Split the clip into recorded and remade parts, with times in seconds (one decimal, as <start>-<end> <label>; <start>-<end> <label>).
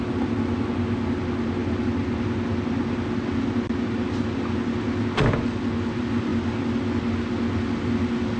0.0-8.4 recorded